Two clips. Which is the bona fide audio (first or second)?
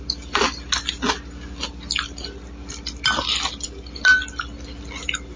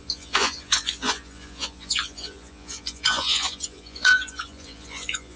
first